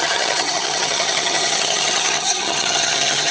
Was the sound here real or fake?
fake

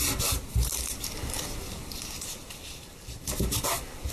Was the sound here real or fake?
real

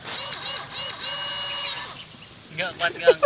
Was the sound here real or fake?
real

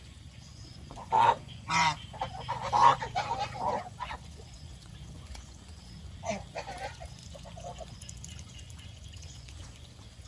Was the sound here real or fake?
fake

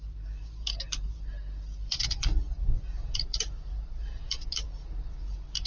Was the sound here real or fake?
fake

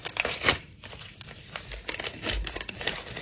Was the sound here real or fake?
real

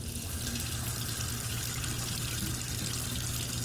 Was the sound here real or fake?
real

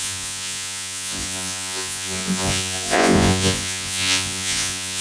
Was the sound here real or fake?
fake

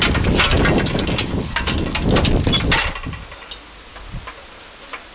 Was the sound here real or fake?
real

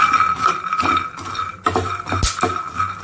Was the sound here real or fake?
real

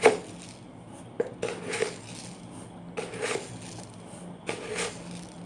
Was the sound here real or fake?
real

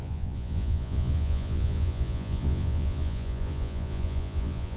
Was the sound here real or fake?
fake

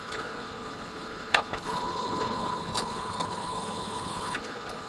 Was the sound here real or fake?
fake